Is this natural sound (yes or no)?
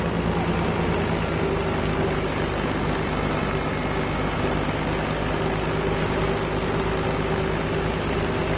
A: yes